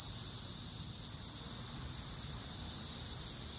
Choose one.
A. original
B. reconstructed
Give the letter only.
A